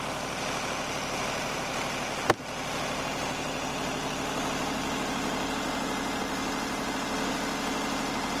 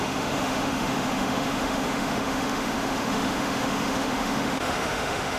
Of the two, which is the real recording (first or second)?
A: first